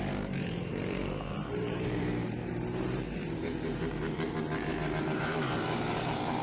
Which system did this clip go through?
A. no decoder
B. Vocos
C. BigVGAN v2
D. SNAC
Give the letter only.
C